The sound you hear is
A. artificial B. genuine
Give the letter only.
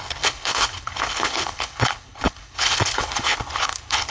A